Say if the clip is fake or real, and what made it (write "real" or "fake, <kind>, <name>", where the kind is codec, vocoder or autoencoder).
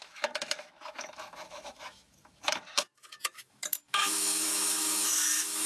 fake, autoencoder, DAC-VAE